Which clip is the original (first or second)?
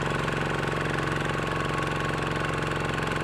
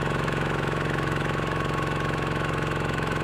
first